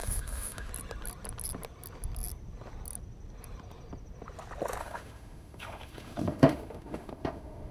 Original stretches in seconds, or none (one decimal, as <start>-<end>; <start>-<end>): 0.7-4.8

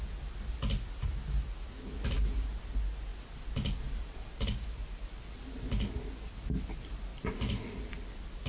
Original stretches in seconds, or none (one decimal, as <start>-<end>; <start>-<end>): 0.0-7.1

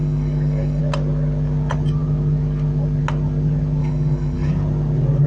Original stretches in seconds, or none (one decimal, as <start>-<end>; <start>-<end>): 0.8-3.8; 4.5-5.3